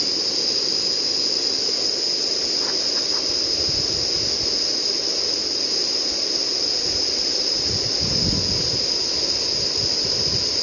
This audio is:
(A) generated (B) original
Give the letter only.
B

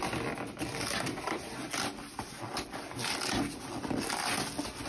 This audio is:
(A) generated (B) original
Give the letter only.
B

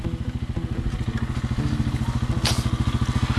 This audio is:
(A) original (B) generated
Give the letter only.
A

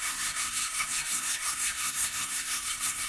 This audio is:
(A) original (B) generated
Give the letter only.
B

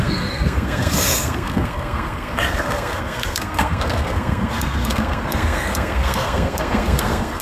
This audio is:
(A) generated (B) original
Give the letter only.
A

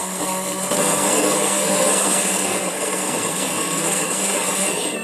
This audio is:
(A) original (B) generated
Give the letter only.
B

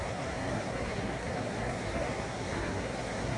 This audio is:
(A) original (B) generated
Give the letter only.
B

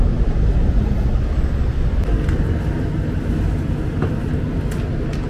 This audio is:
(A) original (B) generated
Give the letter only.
A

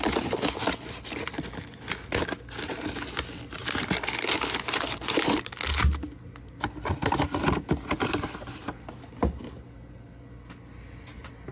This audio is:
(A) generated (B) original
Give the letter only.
B